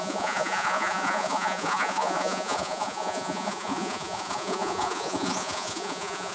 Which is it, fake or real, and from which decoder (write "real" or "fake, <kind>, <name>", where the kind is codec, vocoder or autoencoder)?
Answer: fake, vocoder, Vocos